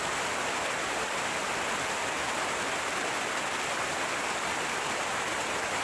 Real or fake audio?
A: real